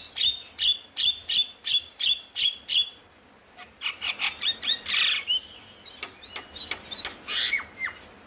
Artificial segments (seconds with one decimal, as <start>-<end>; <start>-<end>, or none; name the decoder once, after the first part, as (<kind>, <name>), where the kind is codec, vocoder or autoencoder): 0.0-2.9 (vocoder, BigVGAN v2)